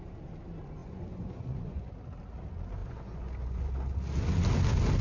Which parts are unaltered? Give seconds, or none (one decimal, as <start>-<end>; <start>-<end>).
0.0-0.8; 1.9-2.8; 3.7-5.0